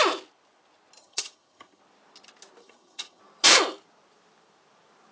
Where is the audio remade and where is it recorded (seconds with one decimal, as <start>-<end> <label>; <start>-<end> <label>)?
0.0-1.0 recorded; 1.0-1.8 remade; 1.8-2.6 recorded; 2.6-3.2 remade; 3.2-5.1 recorded